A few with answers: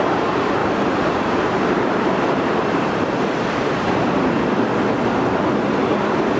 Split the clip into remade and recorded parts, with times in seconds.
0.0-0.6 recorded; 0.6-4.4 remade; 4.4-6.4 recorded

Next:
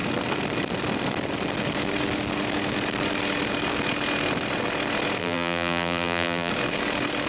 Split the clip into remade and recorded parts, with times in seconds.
0.0-5.2 recorded; 5.2-6.5 remade; 6.5-7.3 recorded

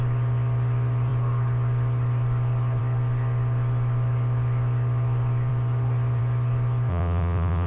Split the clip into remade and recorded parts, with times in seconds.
0.0-6.9 recorded; 6.9-7.7 remade

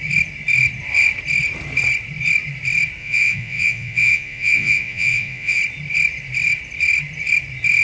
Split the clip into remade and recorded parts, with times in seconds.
0.0-3.0 recorded; 3.0-5.6 remade; 5.6-7.8 recorded

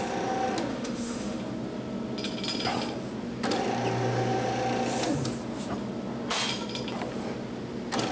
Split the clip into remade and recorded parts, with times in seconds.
0.0-0.7 recorded; 0.7-1.4 remade; 1.4-8.1 recorded